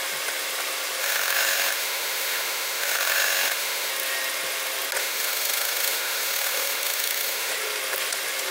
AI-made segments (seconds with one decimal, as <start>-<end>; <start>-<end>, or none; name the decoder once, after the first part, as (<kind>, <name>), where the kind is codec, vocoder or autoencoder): 1.0-3.9 (autoencoder, DAC-VAE); 5.0-7.5